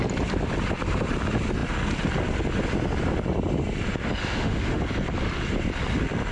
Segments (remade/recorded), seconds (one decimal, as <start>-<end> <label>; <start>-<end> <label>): 0.0-4.2 recorded; 4.2-4.8 remade; 4.8-6.3 recorded